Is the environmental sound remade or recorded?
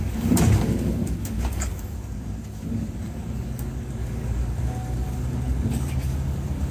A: remade